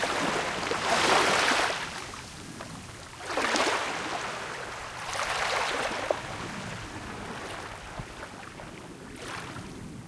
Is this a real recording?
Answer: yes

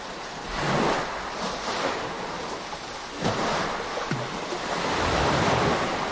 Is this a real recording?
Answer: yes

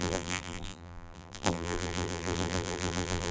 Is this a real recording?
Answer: no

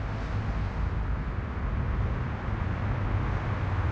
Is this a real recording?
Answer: yes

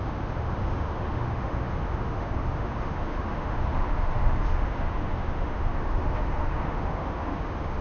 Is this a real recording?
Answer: no